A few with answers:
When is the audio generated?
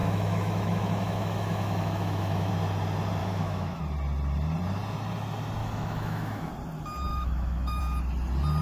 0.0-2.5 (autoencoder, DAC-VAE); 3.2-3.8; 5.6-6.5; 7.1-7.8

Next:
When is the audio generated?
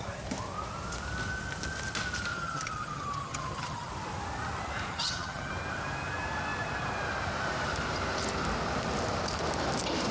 2.3-3.9 (vocoder, HiFi-GAN); 4.9-5.5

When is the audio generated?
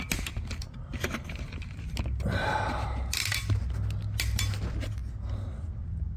none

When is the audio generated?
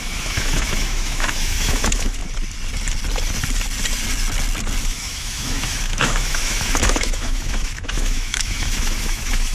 0.0-2.2 (autoencoder, DAC-VAE); 4.8-9.5